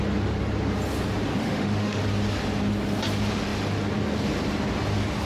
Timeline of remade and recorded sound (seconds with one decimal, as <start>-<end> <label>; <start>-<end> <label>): 0.0-1.4 recorded; 1.4-2.0 remade; 2.0-5.3 recorded